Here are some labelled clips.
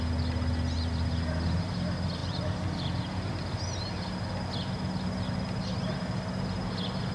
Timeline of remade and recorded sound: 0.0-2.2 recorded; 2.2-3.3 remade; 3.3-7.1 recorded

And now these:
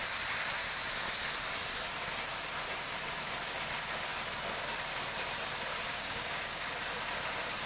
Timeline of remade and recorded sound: 0.0-5.9 recorded; 5.9-6.7 remade; 6.7-7.7 recorded

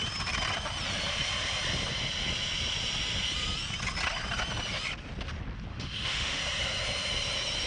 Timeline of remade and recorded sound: 0.0-5.7 recorded; 5.7-6.4 remade; 6.4-7.7 recorded

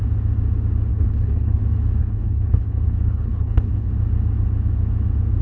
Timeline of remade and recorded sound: 0.0-0.9 recorded; 0.9-1.6 remade; 1.6-2.0 recorded; 2.0-3.9 remade; 3.9-5.4 recorded

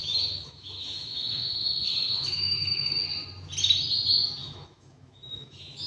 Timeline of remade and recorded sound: 0.0-3.0 remade; 3.0-4.4 recorded; 4.4-5.9 remade

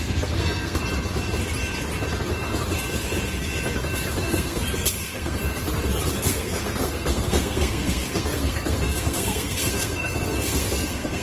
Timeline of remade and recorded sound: 0.0-0.8 remade; 0.8-4.2 recorded; 4.2-5.4 remade; 5.4-6.1 recorded; 6.1-11.2 remade